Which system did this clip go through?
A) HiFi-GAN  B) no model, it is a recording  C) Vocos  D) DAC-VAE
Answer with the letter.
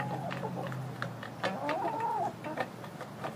B